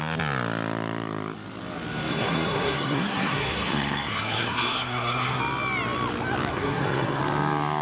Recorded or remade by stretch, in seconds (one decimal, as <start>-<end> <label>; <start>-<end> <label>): 0.0-2.1 recorded; 2.1-5.4 remade; 5.4-6.5 recorded; 6.5-7.2 remade; 7.2-7.8 recorded